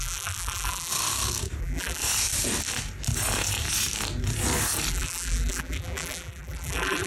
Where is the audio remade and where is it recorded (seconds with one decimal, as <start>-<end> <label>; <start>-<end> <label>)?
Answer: 0.0-0.9 remade; 0.9-1.6 recorded; 1.6-2.0 remade; 2.0-4.9 recorded; 4.9-7.1 remade